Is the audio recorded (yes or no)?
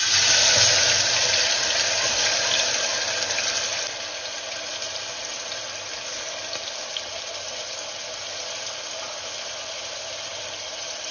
yes